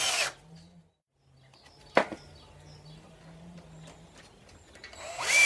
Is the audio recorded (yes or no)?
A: yes